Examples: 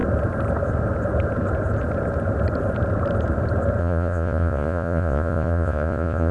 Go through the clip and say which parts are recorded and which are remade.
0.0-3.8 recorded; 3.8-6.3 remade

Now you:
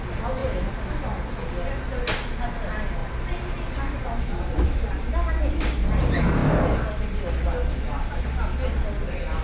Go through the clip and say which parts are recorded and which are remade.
0.0-9.4 recorded

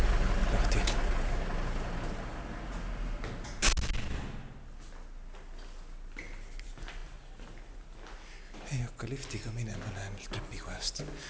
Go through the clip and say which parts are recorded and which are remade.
0.0-11.3 recorded

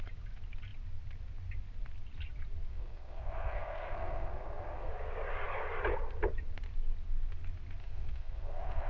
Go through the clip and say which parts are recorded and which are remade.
0.0-2.7 recorded; 2.7-4.9 remade; 4.9-7.8 recorded; 7.8-8.9 remade

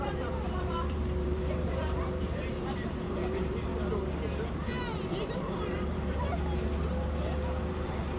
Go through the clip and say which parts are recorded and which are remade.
0.0-3.7 remade; 3.7-4.8 recorded; 4.8-6.3 remade; 6.3-7.7 recorded; 7.7-8.2 remade